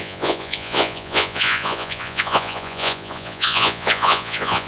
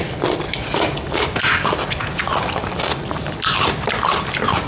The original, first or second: second